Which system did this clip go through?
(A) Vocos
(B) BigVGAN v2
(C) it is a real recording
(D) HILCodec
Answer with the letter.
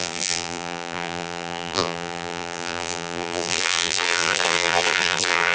B